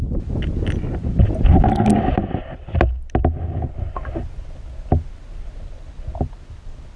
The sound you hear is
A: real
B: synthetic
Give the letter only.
A